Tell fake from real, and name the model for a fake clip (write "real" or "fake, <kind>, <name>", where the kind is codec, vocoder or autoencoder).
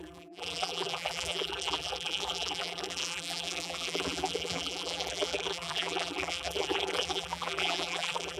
fake, vocoder, BigVGAN v2